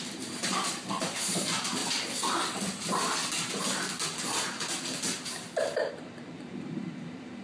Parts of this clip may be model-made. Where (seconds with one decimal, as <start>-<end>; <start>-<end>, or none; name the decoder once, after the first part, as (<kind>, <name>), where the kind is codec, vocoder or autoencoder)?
0.0-1.8 (vocoder, BigVGAN v2); 5.9-7.4